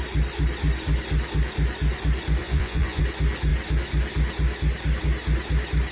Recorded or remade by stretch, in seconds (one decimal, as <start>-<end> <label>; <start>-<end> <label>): 0.0-2.4 recorded; 2.4-3.0 remade; 3.0-5.9 recorded